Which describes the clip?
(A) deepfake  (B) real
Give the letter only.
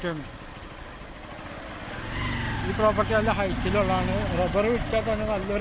B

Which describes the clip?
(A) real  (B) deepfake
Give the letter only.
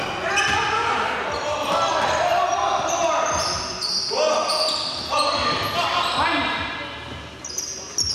A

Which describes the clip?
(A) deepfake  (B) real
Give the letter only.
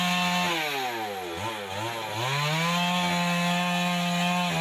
B